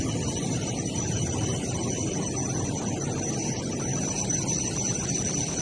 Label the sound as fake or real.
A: real